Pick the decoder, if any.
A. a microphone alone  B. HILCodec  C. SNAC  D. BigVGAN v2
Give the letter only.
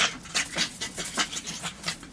A